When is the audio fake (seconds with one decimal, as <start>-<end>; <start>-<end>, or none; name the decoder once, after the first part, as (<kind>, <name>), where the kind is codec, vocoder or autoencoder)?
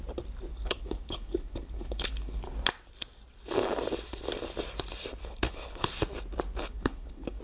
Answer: 0.5-2.4 (codec, HILCodec); 5.2-5.9; 6.6-7.4